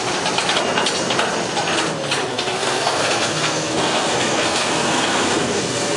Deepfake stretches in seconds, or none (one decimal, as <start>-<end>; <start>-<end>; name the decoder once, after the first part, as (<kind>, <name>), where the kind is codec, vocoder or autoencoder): 2.3-6.0 (codec, SNAC)